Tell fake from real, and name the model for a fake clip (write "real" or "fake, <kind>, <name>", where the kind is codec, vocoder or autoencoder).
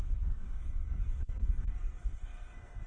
fake, codec, SNAC